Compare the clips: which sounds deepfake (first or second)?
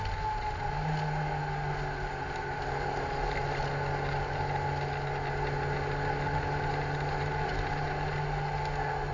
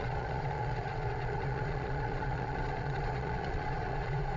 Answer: second